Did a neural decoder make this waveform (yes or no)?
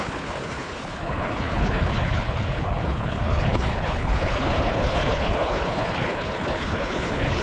yes